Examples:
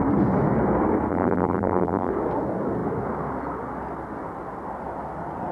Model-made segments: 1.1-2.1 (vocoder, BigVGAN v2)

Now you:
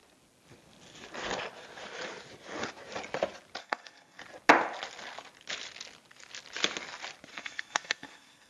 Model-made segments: 3.6-4.2 (codec, SNAC); 7.3-8.5

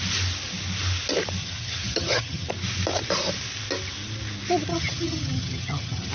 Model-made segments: 1.4-2.5 (vocoder, HiFi-GAN); 4.7-6.1

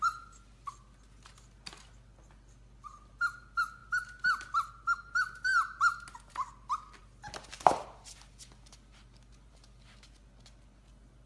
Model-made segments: none

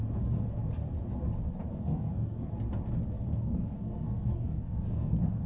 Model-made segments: 1.7-2.5 (codec, SNAC); 3.1-5.5

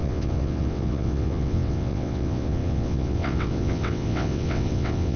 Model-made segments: 0.0-5.2 (vocoder, WaveNeXt)

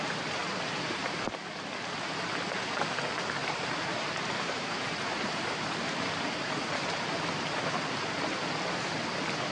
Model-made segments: 0.4-1.0 (vocoder, BigVGAN v2); 3.4-7.6